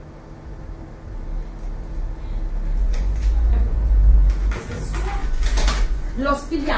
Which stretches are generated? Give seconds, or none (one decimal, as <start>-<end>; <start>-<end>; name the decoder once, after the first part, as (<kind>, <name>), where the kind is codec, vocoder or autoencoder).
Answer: 2.8-4.5 (vocoder, Vocos); 5.2-6.8